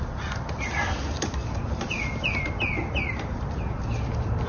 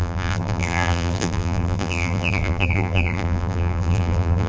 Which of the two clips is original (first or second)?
first